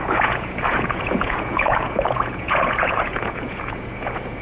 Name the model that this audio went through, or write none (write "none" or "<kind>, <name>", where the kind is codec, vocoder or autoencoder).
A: vocoder, Vocos